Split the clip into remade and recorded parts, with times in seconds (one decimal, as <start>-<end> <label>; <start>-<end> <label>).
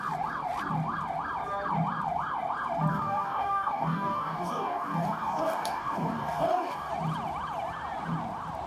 0.0-2.9 recorded; 2.9-6.9 remade; 6.9-8.7 recorded